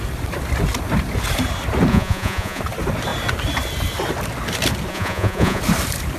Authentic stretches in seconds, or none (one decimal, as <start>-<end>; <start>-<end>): 0.0-1.9; 2.6-4.9; 5.6-6.2